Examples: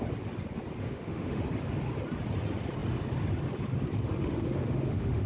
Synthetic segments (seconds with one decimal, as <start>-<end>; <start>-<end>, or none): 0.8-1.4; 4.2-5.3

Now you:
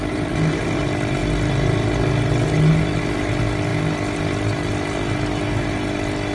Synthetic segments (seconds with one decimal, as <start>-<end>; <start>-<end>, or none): 0.0-0.6

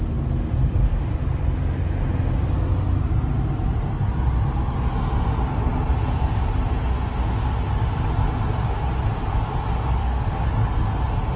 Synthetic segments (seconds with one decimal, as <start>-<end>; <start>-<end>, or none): 10.0-10.5